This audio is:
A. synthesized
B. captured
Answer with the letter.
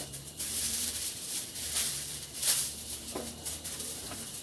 A